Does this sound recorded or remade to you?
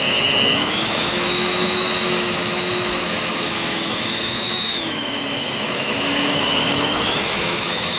remade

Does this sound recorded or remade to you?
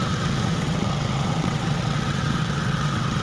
remade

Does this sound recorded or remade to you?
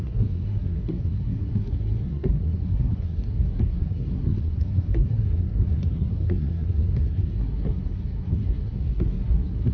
remade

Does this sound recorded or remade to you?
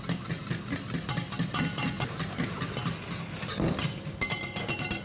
recorded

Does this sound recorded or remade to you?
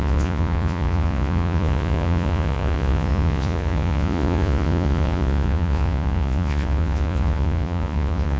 remade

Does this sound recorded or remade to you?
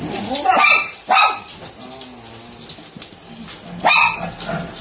recorded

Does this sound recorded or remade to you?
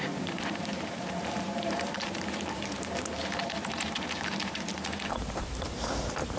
remade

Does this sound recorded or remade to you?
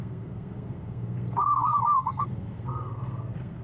remade